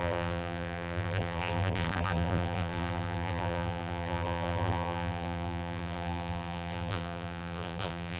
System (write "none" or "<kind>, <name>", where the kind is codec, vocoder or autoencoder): vocoder, BigVGAN v2